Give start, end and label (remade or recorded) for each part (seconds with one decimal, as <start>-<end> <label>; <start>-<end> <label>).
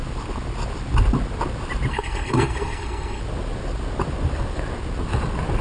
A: 0.0-1.9 recorded; 1.9-3.2 remade; 3.2-5.6 recorded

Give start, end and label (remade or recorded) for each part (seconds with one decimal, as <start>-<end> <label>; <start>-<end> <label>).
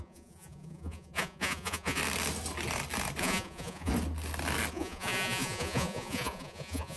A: 0.0-2.0 remade; 2.0-3.2 recorded; 3.2-3.9 remade; 3.9-4.7 recorded; 4.7-7.0 remade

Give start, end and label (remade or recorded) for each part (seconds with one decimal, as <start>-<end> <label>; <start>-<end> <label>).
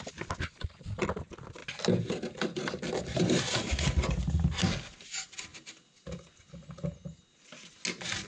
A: 0.0-8.3 recorded